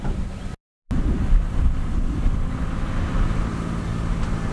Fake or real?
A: real